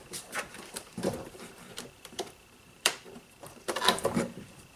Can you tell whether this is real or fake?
fake